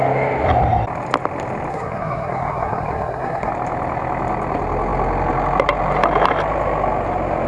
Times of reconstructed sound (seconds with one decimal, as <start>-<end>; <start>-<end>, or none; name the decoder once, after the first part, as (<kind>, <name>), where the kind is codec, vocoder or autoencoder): 1.7-3.5 (codec, SNAC)